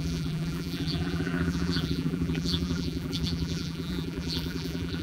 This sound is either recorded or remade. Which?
remade